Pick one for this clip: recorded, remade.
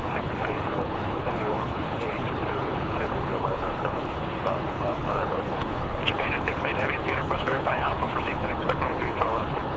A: remade